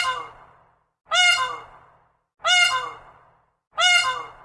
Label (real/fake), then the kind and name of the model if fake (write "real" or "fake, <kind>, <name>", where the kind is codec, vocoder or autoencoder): real